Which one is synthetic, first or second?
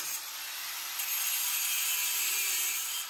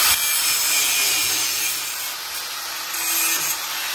first